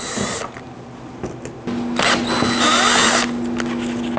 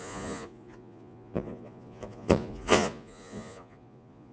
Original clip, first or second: first